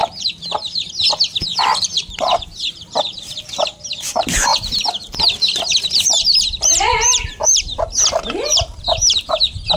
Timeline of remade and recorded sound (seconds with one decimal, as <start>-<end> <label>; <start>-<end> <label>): 0.0-1.5 recorded; 1.5-9.8 remade